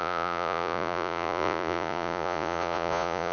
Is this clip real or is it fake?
fake